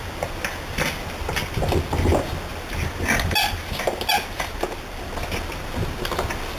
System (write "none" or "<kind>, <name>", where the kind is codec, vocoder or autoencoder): none